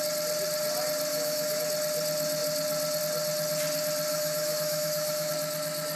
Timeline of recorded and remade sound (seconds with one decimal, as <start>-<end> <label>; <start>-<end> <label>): 0.0-1.1 recorded; 1.1-1.6 remade; 1.6-4.1 recorded; 4.1-5.3 remade; 5.3-5.9 recorded